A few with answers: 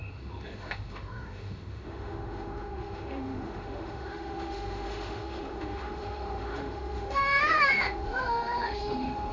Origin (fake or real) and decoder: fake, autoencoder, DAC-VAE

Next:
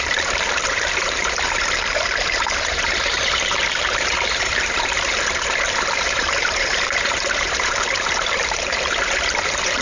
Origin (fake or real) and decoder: fake, vocoder, BigVGAN v2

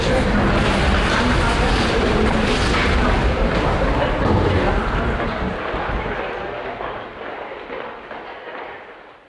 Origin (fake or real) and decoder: real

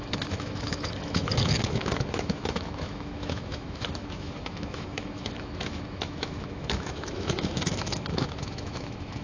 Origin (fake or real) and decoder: fake, autoencoder, DAC-VAE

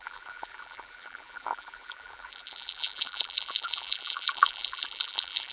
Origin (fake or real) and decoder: fake, vocoder, BigVGAN v2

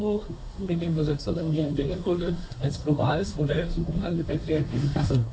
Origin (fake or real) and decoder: fake, codec, SNAC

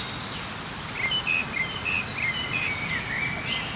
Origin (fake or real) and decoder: real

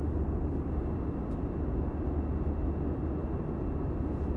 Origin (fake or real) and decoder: real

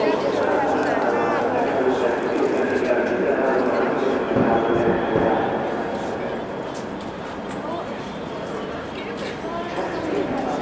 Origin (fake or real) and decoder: real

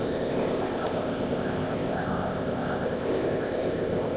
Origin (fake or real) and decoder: fake, codec, ZipCodec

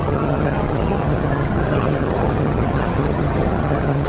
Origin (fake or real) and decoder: fake, vocoder, HiFi-GAN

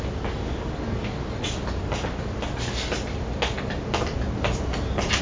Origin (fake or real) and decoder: real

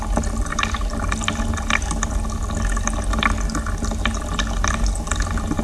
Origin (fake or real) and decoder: real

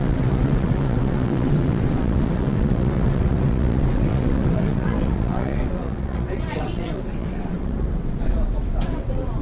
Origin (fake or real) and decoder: fake, vocoder, WaveNeXt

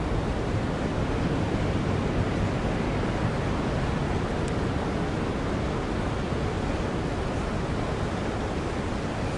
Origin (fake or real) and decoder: real